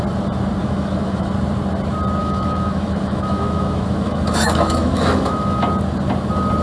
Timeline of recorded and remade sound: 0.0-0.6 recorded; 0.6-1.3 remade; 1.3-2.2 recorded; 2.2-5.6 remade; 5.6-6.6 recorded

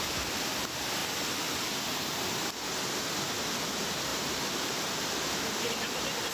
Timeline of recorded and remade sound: 0.0-4.1 recorded; 4.1-5.4 remade; 5.4-6.3 recorded

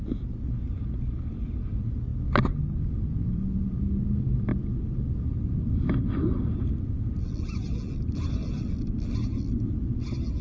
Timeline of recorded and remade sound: 0.0-10.4 recorded

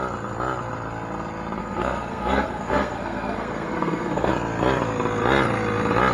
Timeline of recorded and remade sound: 0.0-1.6 recorded; 1.6-4.3 remade; 4.3-6.1 recorded

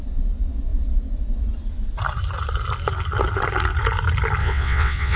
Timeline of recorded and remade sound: 0.0-4.4 recorded; 4.4-5.2 remade